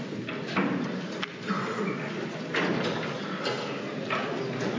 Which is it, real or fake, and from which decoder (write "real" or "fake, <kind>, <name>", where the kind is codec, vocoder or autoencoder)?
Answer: real